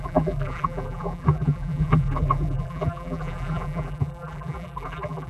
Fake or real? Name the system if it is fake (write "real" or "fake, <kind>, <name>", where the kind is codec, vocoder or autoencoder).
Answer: fake, vocoder, BigVGAN v2